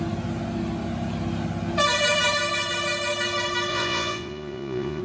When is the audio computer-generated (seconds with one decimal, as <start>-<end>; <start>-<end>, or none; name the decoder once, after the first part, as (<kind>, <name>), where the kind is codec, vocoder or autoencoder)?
3.7-5.0 (vocoder, Vocos)